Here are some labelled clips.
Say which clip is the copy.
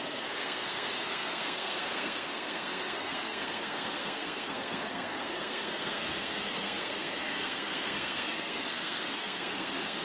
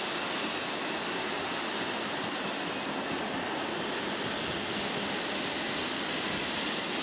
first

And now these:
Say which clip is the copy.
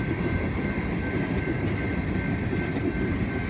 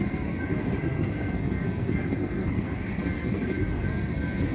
second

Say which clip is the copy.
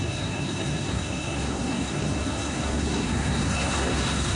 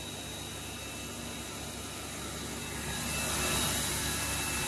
first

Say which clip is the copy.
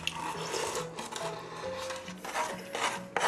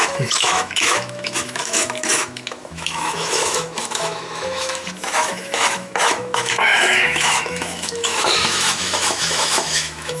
second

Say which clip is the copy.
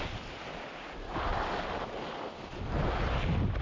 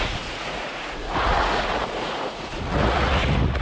second